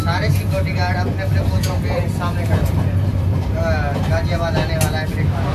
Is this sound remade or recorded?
recorded